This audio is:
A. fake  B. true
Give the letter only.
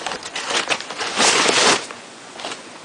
A